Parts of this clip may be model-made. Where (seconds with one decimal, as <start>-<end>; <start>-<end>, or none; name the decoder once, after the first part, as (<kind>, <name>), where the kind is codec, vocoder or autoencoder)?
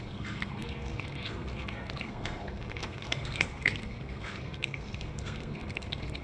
0.0-6.2 (codec, SNAC)